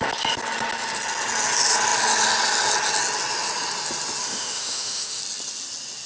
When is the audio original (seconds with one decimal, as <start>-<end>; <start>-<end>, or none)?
0.0-4.2; 5.2-6.1